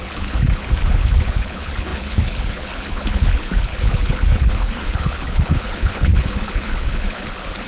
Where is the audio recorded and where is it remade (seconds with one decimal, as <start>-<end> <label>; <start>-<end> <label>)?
0.0-7.7 remade